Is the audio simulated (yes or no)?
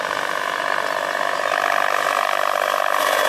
no